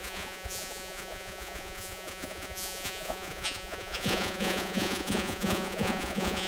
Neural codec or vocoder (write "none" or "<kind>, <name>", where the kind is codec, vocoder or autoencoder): vocoder, Vocos